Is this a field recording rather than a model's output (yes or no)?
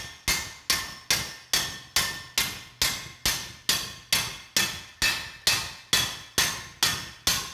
yes